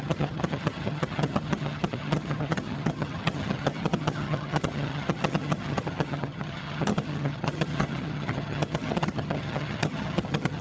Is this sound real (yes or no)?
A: no